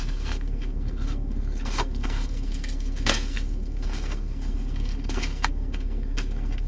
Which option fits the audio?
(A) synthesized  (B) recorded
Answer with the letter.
A